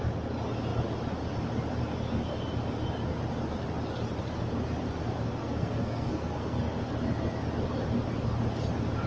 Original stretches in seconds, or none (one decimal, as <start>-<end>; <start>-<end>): 0.0-5.4; 6.8-9.1